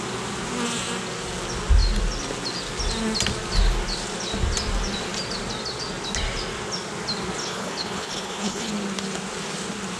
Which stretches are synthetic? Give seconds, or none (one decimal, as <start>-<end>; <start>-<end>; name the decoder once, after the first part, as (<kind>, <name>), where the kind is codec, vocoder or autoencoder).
7.4-8.7 (codec, HILCodec)